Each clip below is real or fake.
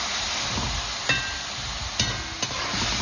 real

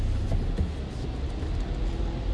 real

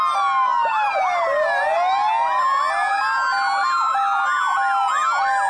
real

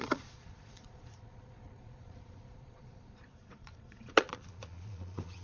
fake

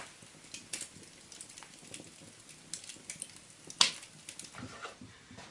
real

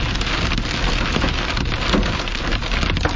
real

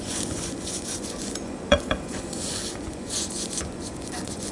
fake